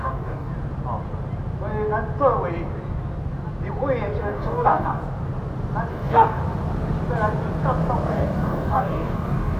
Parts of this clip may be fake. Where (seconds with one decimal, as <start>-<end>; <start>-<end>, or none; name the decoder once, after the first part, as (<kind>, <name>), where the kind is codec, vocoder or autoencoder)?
0.0-0.5 (codec, DAC); 4.2-5.0; 5.9-6.4; 8.1-9.6